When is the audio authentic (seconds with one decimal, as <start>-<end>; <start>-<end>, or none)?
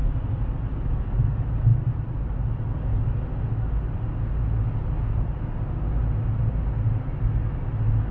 0.0-1.7; 2.7-8.1